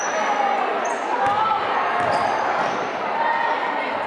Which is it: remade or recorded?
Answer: recorded